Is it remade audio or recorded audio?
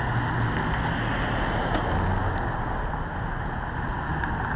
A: recorded